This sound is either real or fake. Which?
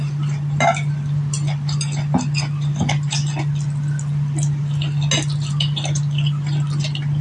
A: real